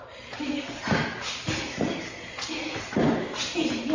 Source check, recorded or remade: recorded